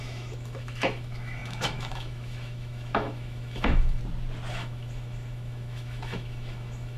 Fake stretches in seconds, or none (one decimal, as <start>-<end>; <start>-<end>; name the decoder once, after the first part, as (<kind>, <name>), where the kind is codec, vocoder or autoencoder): 0.0-4.0 (autoencoder, DAC-VAE); 4.5-7.0